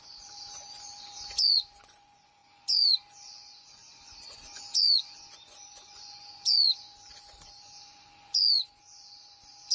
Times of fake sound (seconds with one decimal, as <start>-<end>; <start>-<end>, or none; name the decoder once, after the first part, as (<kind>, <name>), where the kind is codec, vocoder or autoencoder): 0.0-9.7 (vocoder, Vocos)